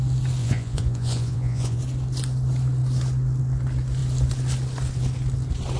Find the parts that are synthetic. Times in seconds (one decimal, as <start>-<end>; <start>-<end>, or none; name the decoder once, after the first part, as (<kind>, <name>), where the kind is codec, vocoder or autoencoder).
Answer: 0.4-1.8 (vocoder, Vocos)